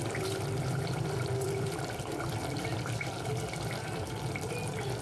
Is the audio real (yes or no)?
no